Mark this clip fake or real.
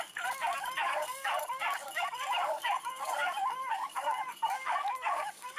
fake